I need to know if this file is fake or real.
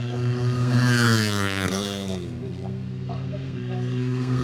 fake